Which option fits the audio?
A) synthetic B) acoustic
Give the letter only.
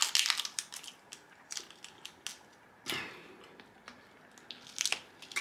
B